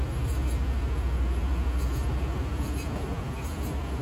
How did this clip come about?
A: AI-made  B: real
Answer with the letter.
B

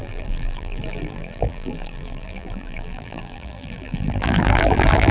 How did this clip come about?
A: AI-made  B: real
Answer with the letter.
A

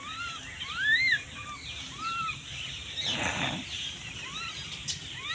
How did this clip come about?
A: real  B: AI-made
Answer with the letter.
B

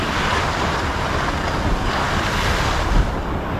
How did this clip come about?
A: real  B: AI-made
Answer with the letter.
A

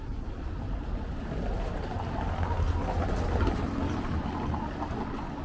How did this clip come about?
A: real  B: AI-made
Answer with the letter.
A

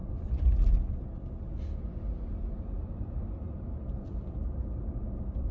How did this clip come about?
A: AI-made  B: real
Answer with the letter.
B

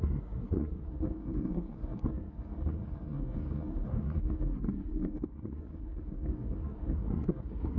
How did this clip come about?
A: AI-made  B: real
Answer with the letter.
A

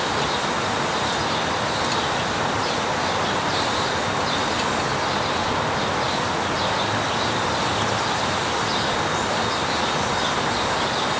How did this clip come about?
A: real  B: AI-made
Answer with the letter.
A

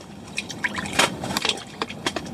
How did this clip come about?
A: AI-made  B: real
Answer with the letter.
B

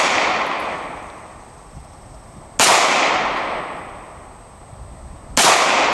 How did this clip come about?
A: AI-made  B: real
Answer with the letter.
B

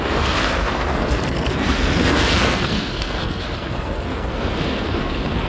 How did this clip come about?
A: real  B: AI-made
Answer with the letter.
B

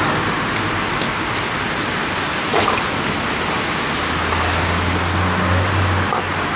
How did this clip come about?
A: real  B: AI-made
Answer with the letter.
A